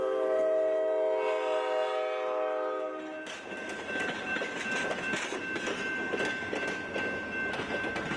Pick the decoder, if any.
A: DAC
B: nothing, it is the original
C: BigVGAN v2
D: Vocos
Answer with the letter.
B